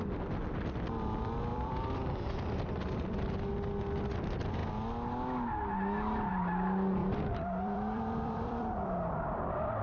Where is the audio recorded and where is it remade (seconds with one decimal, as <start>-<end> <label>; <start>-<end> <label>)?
0.0-1.5 recorded; 1.5-3.5 remade; 3.5-7.0 recorded; 7.0-9.1 remade; 9.1-9.8 recorded